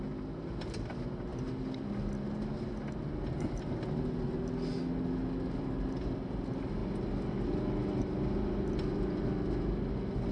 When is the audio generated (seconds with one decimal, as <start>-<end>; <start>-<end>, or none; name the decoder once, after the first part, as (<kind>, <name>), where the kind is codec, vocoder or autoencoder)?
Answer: none